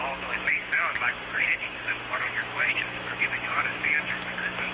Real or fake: fake